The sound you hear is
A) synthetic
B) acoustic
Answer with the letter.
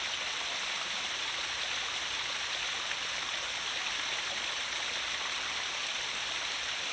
B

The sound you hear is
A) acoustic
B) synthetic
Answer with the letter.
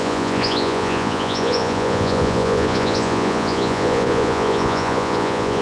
B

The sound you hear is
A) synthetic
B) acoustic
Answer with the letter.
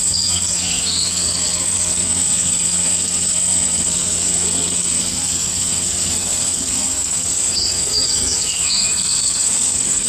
A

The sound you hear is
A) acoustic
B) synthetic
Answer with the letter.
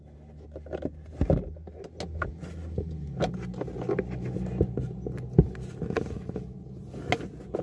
A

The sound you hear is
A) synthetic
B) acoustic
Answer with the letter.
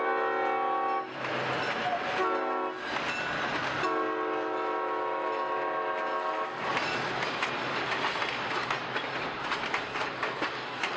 B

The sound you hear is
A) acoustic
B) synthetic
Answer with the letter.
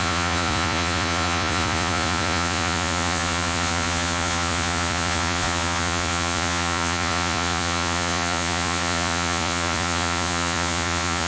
B